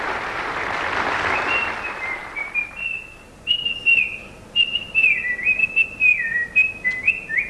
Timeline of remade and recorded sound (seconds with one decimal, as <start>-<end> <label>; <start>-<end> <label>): 0.0-7.5 recorded

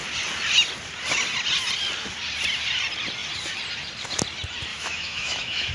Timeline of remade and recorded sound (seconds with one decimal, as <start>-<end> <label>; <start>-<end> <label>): 0.0-4.7 recorded; 4.7-5.7 remade

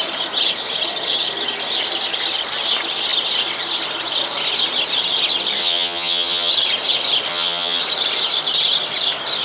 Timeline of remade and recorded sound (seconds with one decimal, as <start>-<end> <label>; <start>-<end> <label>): 0.0-5.6 recorded; 5.6-6.5 remade; 6.5-7.3 recorded; 7.3-7.8 remade; 7.8-9.4 recorded

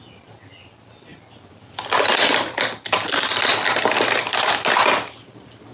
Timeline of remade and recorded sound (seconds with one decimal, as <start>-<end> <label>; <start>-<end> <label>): 0.0-5.7 recorded

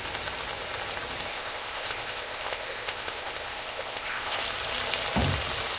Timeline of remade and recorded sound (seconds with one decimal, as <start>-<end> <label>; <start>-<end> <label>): 0.0-1.3 recorded; 1.3-4.4 remade; 4.4-5.8 recorded

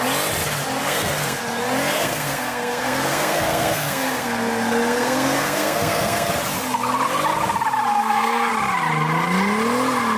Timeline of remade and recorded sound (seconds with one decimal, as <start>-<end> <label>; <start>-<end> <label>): 0.0-0.8 recorded; 0.8-1.4 remade; 1.4-1.9 recorded; 1.9-6.3 remade; 6.3-7.9 recorded; 7.9-8.5 remade; 8.5-10.2 recorded

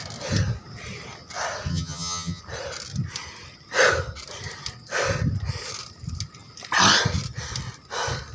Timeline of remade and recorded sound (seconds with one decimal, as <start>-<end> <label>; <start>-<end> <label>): 0.0-1.7 recorded; 1.7-2.4 remade; 2.4-8.3 recorded